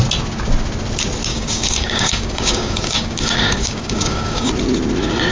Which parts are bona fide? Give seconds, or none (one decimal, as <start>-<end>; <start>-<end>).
0.0-1.3; 4.5-5.3